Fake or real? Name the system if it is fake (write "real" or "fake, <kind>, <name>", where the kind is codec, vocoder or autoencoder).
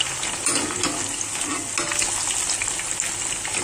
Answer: real